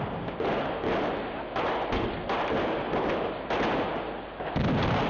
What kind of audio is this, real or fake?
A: real